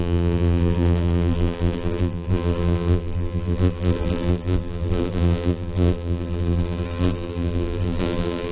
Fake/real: fake